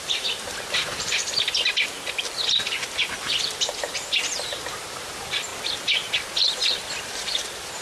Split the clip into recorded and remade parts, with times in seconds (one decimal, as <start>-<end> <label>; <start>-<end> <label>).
0.0-1.2 remade; 1.2-3.2 recorded; 3.2-5.5 remade; 5.5-7.0 recorded; 7.0-7.8 remade